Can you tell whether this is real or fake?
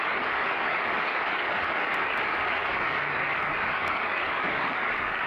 fake